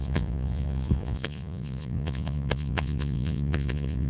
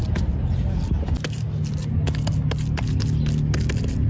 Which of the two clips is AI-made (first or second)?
first